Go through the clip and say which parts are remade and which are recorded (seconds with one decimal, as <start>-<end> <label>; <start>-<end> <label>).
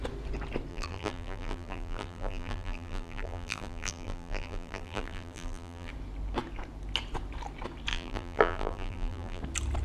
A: 0.0-0.7 recorded; 0.7-5.9 remade; 5.9-7.9 recorded; 7.9-9.4 remade; 9.4-9.8 recorded